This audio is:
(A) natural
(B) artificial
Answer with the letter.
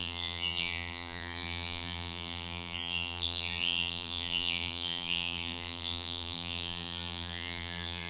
B